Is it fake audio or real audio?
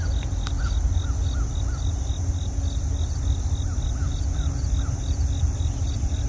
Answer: real